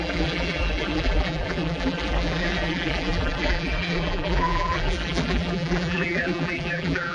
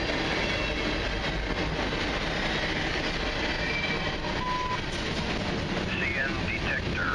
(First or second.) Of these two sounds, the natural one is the second